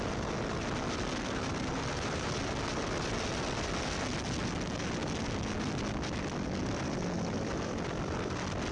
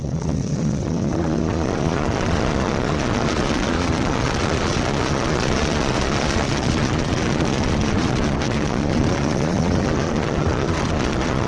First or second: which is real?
first